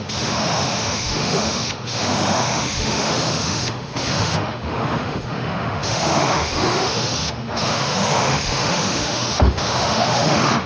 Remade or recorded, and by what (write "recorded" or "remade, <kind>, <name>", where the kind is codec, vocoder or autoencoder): remade, autoencoder, DAC-VAE